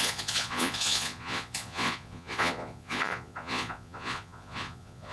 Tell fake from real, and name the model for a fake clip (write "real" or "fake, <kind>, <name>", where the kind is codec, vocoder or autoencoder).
fake, vocoder, Vocos